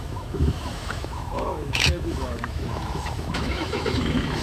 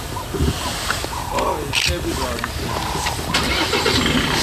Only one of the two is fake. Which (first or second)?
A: first